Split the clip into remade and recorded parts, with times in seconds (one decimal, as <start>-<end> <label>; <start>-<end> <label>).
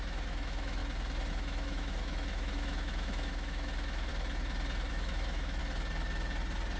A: 0.0-0.8 remade; 0.8-1.3 recorded; 1.3-4.1 remade; 4.1-4.9 recorded; 4.9-5.6 remade; 5.6-6.8 recorded